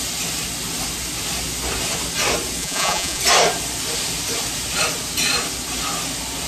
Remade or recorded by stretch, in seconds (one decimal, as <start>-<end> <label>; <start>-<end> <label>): 0.0-2.6 recorded; 2.6-3.2 remade; 3.2-6.5 recorded